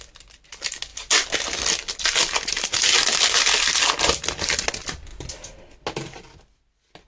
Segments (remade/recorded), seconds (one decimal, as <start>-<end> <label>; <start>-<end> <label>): 0.0-7.1 recorded